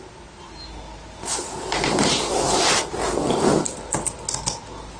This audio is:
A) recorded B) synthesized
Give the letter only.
A